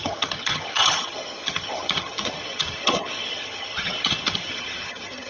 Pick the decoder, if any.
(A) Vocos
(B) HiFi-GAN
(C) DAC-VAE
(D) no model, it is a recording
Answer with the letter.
B